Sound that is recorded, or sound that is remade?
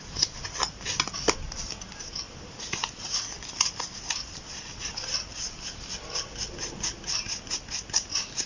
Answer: recorded